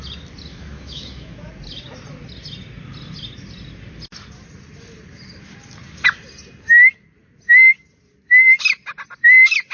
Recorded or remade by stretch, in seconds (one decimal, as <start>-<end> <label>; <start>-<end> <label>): 0.0-0.5 recorded; 0.5-1.5 remade; 1.5-9.7 recorded